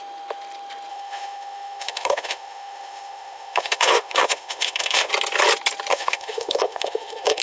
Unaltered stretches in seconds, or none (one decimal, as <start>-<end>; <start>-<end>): 0.0-0.9; 5.1-5.9